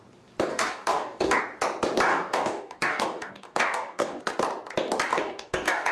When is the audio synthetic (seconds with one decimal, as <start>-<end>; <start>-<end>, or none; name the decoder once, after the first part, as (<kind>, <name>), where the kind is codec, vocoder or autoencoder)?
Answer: 0.5-1.4 (codec, DAC); 2.1-4.2; 5.1-5.9